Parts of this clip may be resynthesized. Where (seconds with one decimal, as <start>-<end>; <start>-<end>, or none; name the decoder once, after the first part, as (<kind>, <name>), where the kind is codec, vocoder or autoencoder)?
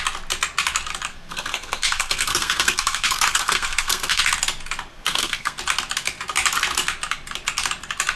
1.1-4.2 (codec, SNAC); 4.9-5.6